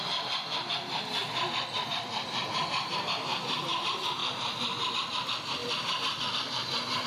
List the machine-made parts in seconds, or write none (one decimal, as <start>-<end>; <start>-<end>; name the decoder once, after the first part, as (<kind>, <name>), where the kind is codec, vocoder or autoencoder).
1.2-2.5 (vocoder, BigVGAN v2); 5.6-7.1